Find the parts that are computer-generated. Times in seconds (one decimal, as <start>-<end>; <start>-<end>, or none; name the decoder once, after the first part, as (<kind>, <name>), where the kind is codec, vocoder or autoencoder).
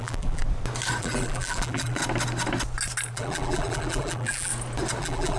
0.0-0.4 (vocoder, BigVGAN v2); 1.0-2.0; 3.1-4.5; 5.0-5.4